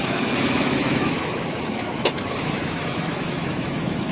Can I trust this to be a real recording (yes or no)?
no